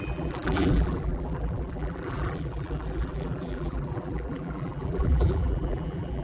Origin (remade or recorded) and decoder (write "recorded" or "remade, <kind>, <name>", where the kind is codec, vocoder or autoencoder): remade, vocoder, BigVGAN v2